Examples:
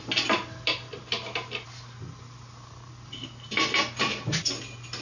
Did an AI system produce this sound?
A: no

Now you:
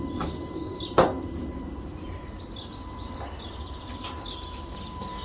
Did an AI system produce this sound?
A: yes